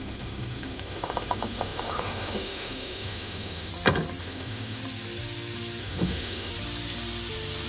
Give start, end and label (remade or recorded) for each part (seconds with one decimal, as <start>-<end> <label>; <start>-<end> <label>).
0.0-3.7 remade; 3.7-4.2 recorded; 4.2-4.8 remade; 4.8-5.8 recorded; 5.8-6.5 remade; 6.5-7.7 recorded